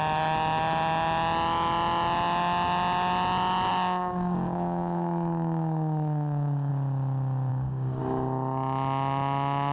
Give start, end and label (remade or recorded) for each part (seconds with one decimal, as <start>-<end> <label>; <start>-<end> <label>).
0.0-4.0 recorded; 4.0-6.7 remade; 6.7-7.5 recorded; 7.5-8.0 remade; 8.0-9.7 recorded